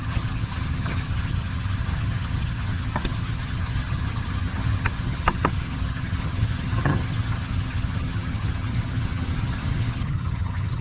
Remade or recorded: remade